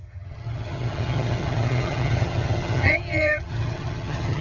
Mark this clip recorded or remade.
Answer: remade